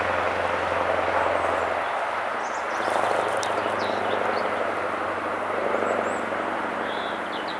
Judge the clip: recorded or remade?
recorded